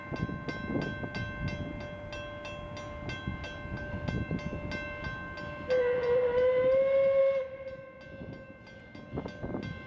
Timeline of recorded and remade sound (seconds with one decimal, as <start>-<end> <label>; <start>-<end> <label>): 0.0-9.9 recorded